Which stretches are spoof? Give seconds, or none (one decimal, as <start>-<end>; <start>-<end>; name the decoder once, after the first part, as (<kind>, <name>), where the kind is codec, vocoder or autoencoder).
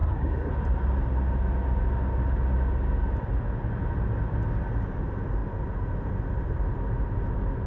0.0-0.5 (codec, SNAC)